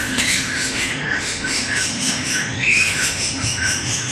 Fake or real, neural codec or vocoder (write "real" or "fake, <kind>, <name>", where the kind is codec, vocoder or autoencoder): fake, autoencoder, DAC-VAE